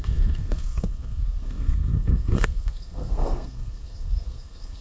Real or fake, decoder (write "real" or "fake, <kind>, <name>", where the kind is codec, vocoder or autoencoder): fake, codec, SNAC